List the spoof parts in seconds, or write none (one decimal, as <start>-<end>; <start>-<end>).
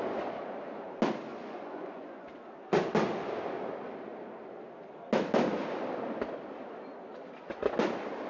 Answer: 1.3-2.3